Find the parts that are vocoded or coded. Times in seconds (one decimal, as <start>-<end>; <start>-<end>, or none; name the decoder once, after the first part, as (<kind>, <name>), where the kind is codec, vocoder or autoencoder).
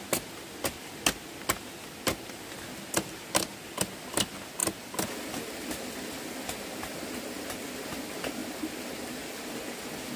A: none